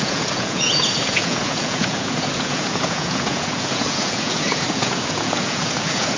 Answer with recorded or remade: remade